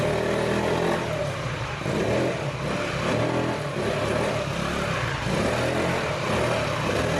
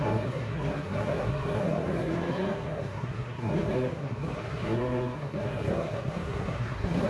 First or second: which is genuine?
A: first